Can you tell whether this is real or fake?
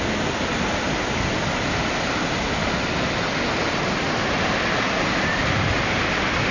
real